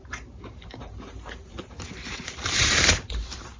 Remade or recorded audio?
remade